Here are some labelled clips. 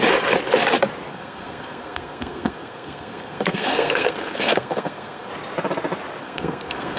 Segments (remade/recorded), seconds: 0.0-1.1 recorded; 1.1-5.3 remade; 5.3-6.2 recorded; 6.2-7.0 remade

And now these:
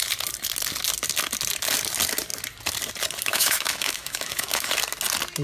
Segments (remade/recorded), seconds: 0.0-3.3 recorded; 3.3-4.7 remade; 4.7-5.4 recorded

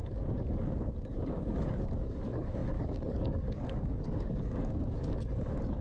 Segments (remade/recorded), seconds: 0.0-5.8 remade

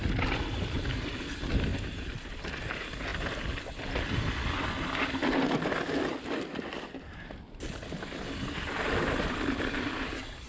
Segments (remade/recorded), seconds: 0.0-10.5 recorded

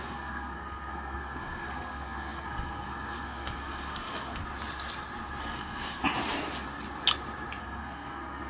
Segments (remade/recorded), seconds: 0.0-4.4 remade; 4.4-5.4 recorded; 5.4-6.0 remade; 6.0-7.6 recorded; 7.6-8.5 remade